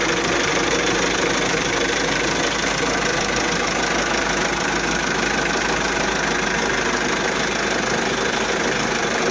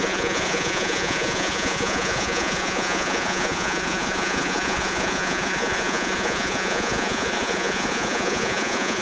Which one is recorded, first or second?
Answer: first